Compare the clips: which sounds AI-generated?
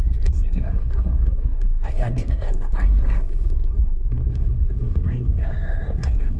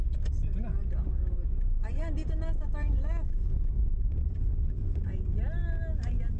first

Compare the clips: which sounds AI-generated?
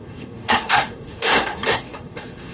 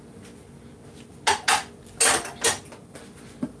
first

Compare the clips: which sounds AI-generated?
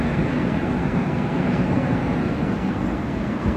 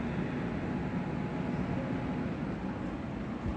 first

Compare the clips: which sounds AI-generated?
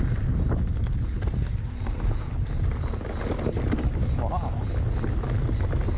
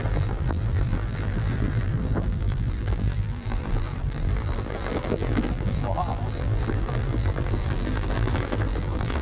second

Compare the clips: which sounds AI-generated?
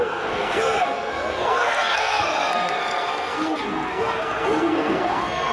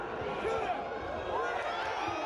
first